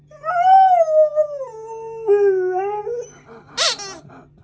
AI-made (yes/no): no